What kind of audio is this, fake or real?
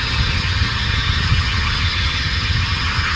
fake